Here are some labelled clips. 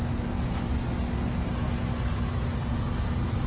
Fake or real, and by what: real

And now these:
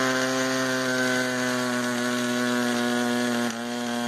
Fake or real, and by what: real